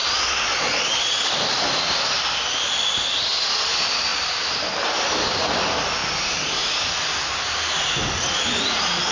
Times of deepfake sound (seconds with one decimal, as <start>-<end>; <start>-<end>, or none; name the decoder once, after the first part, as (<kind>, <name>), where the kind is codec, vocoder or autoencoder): 0.0-1.3 (vocoder, Vocos)